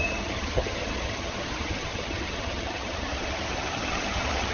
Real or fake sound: fake